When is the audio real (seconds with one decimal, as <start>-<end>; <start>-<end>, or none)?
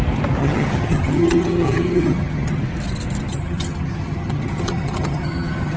0.0-0.4; 2.6-3.3